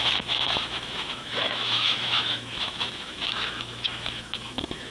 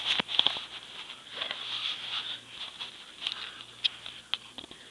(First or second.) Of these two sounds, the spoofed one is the first